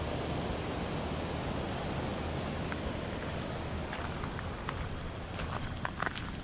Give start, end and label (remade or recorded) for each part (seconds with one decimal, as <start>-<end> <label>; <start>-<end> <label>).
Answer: 0.0-6.4 recorded